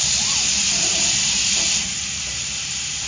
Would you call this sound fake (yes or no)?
yes